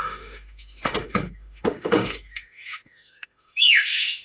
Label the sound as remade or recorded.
remade